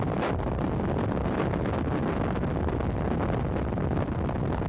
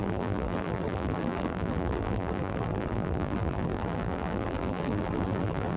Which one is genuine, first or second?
first